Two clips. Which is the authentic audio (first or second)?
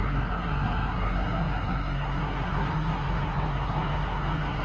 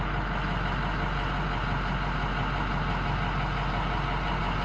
second